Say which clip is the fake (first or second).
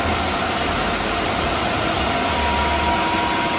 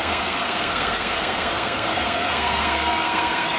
second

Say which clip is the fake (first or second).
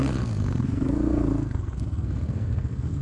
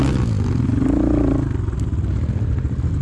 first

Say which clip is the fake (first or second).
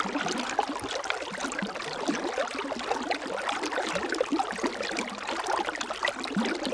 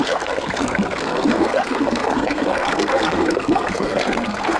second